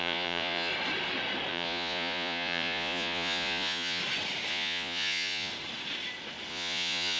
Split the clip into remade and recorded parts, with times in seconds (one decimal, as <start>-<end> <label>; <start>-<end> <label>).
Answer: 0.0-0.7 remade; 0.7-1.5 recorded; 1.5-4.0 remade; 4.0-4.5 recorded; 4.5-5.5 remade; 5.5-6.5 recorded; 6.5-7.2 remade